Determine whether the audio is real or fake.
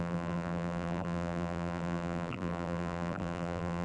fake